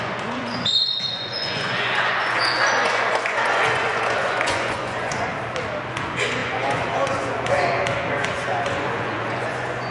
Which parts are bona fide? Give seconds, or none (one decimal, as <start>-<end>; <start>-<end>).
5.3-5.9